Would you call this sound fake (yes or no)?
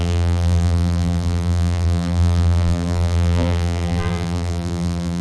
yes